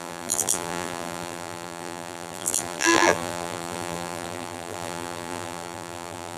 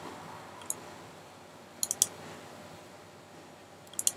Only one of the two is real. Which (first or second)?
second